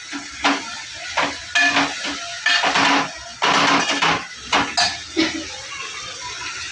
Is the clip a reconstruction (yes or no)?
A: no